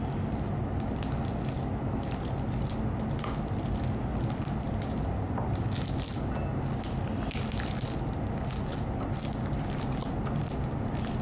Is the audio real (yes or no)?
yes